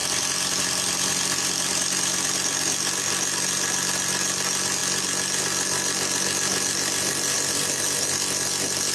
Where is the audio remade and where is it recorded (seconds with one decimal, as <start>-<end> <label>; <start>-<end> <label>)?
0.0-8.9 recorded